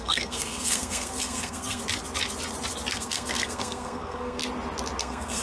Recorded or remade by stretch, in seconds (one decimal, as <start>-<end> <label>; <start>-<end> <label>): 0.0-1.8 remade; 1.8-2.9 recorded; 2.9-4.4 remade; 4.4-5.0 recorded; 5.0-5.4 remade